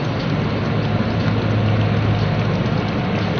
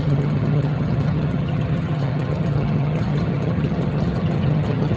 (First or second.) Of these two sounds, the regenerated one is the second